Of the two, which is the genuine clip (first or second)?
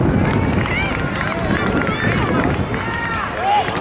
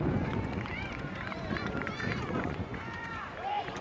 first